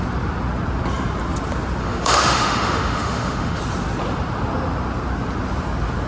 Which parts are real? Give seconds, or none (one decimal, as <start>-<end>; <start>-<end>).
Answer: 0.0-1.8; 3.6-6.1

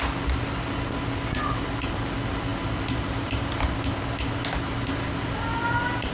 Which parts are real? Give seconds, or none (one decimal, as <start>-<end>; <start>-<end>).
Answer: 0.0-6.1

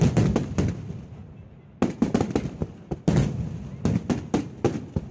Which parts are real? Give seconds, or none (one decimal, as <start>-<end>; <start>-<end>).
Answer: 0.0-5.1

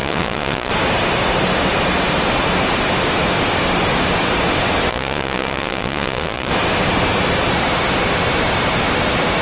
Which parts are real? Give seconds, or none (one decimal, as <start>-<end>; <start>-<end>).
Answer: 0.7-4.9; 6.5-9.4

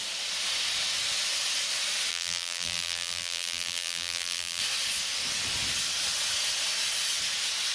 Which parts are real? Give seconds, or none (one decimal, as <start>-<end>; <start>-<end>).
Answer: 0.0-2.1; 4.6-7.7

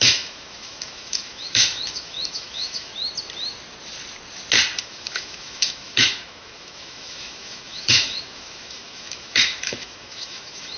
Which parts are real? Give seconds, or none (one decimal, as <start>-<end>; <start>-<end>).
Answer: 2.9-4.8

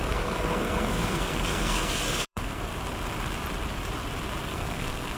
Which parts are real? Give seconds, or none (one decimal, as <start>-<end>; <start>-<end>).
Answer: 2.7-4.4

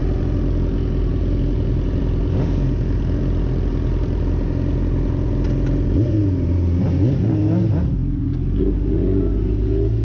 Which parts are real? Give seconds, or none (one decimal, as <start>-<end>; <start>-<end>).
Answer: 0.0-10.0